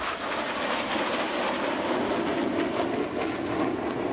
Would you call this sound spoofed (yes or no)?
no